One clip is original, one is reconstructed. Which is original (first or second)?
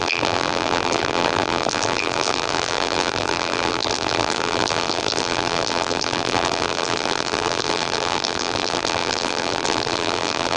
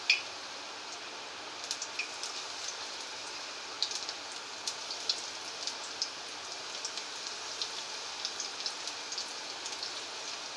second